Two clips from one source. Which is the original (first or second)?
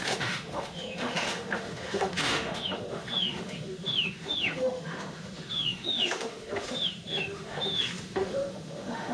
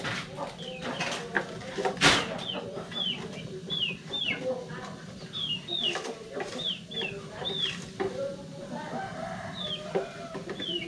second